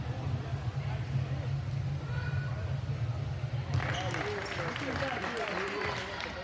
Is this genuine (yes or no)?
yes